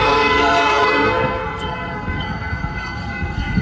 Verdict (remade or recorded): remade